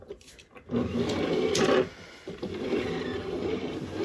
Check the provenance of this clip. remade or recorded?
recorded